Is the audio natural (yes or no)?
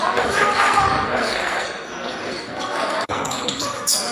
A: no